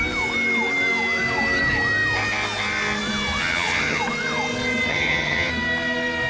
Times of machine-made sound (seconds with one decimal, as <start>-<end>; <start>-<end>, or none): 3.4-4.0; 4.9-5.5

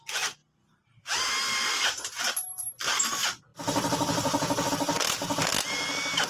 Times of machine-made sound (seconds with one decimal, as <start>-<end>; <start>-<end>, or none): 3.5-4.7

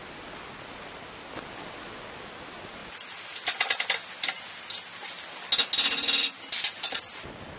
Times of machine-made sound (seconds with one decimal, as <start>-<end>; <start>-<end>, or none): none

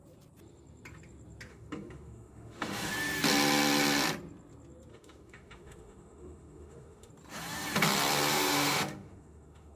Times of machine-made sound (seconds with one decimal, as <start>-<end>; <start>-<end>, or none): 1.5-2.9; 4.9-7.1; 8.3-9.8

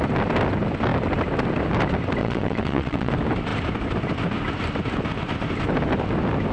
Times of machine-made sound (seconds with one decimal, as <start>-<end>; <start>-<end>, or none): 2.2-3.1